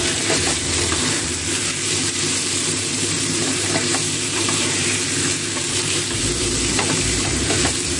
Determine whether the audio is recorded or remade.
remade